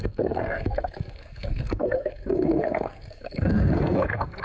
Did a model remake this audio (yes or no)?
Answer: yes